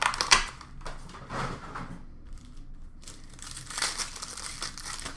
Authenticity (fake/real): real